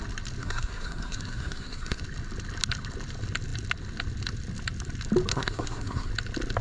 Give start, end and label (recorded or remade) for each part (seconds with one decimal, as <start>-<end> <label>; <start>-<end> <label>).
0.0-0.4 recorded; 0.4-2.0 remade; 2.0-5.3 recorded; 5.3-6.1 remade; 6.1-6.6 recorded